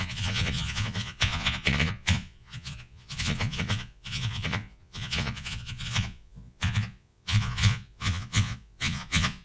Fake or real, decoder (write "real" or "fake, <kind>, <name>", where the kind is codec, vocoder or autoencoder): fake, vocoder, Vocos